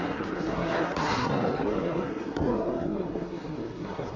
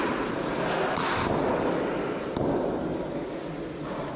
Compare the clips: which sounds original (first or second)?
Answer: second